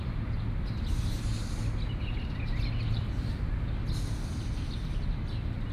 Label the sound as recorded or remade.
recorded